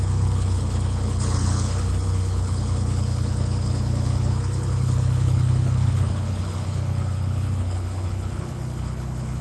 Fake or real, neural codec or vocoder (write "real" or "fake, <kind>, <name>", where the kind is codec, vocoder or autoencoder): fake, codec, HILCodec